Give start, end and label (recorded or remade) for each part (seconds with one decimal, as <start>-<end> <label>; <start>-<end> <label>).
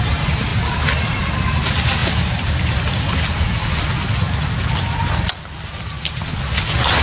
0.0-7.0 recorded